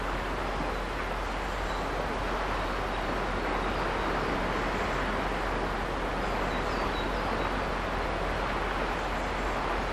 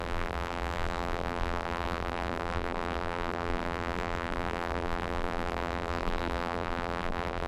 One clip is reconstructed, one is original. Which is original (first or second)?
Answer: first